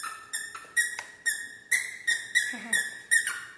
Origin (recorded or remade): recorded